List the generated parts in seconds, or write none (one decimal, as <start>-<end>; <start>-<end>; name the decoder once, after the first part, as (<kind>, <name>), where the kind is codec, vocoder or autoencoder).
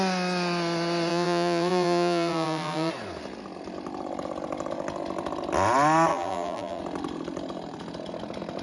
1.1-2.9 (vocoder, BigVGAN v2); 6.1-6.8